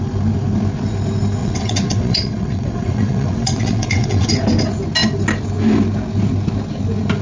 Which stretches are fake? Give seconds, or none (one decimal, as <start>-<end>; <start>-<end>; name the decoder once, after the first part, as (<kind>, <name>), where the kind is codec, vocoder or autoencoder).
1.4-4.3 (vocoder, WaveNeXt)